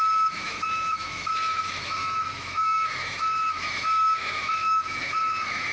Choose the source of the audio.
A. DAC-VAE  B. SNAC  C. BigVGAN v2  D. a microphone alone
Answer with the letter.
A